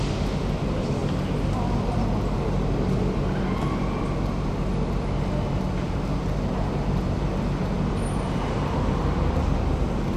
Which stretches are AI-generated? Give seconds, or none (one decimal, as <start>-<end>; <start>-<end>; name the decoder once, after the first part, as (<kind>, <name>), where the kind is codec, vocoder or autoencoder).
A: none